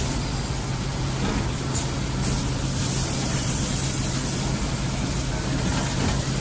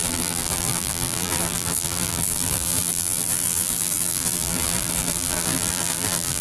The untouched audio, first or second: first